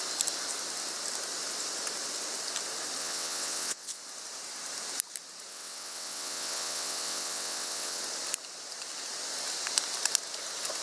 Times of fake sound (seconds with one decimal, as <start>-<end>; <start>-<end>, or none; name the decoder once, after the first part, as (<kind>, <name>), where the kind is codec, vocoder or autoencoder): 3.0-4.0 (vocoder, WaveNeXt); 5.5-8.0